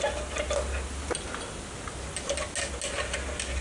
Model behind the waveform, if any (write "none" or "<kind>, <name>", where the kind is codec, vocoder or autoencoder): none